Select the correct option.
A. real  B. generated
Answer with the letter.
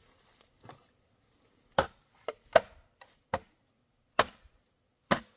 A